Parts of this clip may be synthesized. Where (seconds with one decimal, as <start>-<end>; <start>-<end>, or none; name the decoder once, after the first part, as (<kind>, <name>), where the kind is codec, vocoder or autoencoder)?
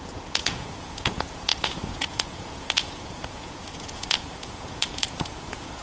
0.0-5.8 (vocoder, Vocos)